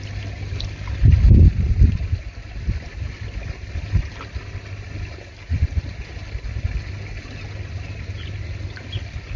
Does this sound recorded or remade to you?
recorded